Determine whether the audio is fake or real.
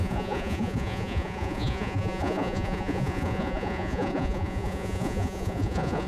fake